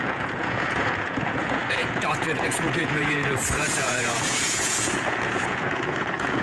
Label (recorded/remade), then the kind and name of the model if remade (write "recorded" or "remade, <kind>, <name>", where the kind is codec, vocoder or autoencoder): remade, vocoder, Vocos